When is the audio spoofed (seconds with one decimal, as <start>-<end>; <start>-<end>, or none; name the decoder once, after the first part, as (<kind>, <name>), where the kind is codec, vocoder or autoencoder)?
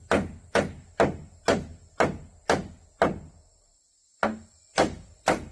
none